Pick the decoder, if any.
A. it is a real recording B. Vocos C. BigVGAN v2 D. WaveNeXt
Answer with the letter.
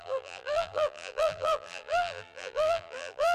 C